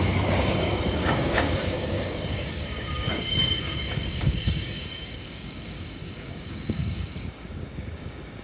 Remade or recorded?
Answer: remade